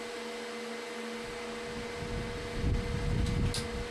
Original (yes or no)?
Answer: yes